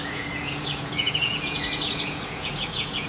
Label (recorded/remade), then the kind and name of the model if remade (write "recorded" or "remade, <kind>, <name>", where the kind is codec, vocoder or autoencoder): remade, vocoder, Vocos